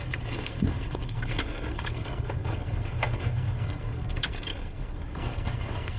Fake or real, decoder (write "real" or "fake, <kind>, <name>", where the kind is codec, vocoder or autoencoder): fake, codec, SNAC